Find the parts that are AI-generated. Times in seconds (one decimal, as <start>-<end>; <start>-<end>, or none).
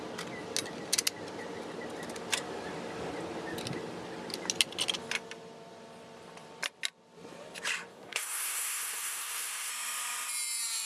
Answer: 7.9-9.7